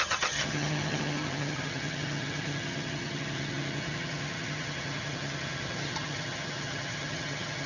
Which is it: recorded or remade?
remade